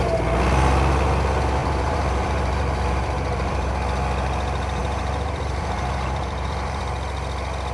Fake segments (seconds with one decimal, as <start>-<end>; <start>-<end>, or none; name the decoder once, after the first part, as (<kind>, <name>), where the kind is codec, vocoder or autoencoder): 1.6-3.7 (vocoder, BigVGAN v2); 4.8-6.8